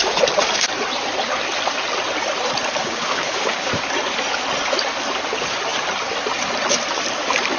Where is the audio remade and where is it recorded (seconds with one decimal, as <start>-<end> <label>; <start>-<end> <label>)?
0.0-2.8 recorded; 2.8-3.7 remade; 3.7-7.6 recorded